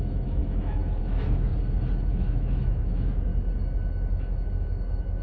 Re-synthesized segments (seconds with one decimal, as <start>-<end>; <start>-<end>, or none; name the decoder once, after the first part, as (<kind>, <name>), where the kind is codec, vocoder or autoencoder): 0.0-1.5 (autoencoder, DAC-VAE); 2.1-3.3; 4.1-5.2